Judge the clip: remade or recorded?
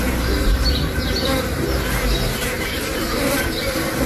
remade